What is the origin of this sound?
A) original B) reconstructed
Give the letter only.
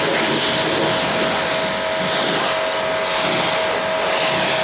A